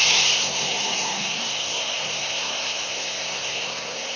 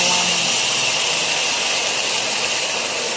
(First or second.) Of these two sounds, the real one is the second